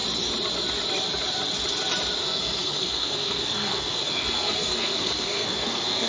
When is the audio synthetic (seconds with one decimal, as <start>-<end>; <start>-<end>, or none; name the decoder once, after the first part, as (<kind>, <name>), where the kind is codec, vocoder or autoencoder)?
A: 2.2-6.1 (codec, SNAC)